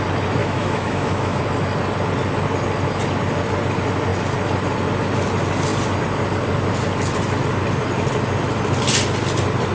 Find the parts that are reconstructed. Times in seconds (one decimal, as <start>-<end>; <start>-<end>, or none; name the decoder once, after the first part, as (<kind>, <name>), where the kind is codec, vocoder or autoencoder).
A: 0.4-1.4 (autoencoder, DAC-VAE)